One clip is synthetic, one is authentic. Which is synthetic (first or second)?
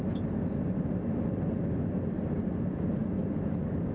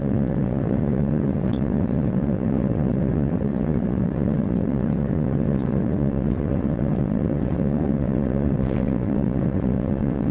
second